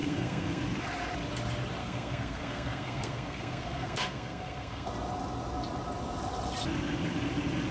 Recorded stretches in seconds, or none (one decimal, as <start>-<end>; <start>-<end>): 0.6-1.8; 4.9-7.7